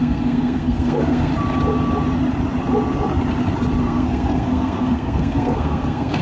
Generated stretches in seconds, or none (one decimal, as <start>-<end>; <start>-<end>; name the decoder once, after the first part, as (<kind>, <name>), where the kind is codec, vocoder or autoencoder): 0.0-1.3 (codec, SNAC); 3.8-6.2